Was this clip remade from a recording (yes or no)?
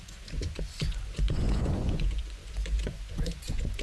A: yes